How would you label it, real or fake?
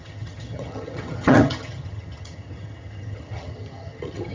fake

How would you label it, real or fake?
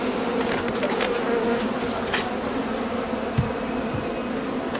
real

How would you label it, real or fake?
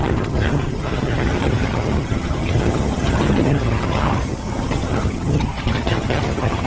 fake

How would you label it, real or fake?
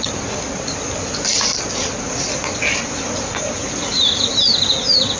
real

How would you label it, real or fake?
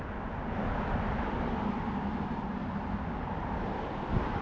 real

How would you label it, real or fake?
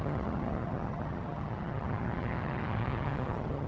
fake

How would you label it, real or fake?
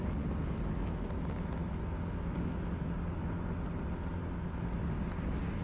real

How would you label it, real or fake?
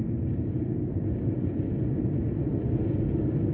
real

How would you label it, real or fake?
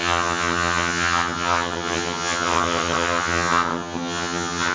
fake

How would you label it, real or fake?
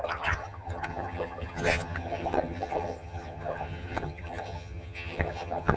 fake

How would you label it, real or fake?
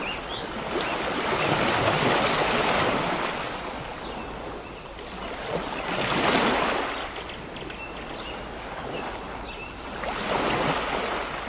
real